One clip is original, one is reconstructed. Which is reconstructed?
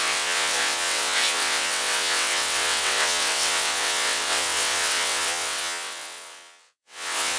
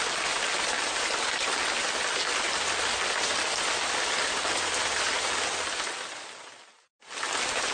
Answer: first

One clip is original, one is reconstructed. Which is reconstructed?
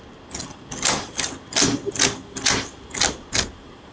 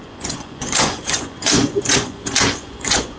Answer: second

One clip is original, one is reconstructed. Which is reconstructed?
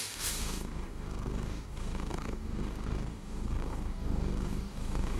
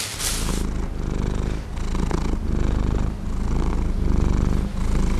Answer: first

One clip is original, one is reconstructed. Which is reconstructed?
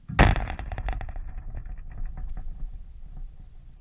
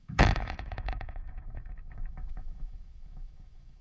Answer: second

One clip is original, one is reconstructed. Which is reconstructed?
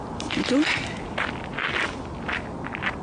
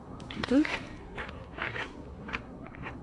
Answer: second